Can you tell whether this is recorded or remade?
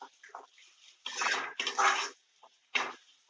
recorded